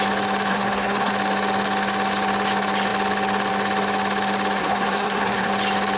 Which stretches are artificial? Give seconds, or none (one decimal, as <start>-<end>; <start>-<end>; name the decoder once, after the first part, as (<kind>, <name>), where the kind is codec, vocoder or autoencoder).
0.5-1.1 (codec, SNAC); 4.6-5.5